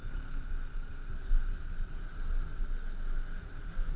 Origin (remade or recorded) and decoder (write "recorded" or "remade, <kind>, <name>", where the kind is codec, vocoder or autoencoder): recorded